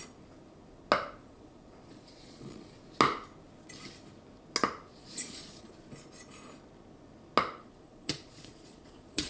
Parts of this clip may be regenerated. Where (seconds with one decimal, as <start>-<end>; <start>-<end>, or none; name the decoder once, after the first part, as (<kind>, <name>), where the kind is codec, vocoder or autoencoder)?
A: 1.2-2.8 (vocoder, Vocos); 4.9-5.7; 7.6-9.3